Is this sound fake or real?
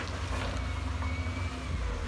real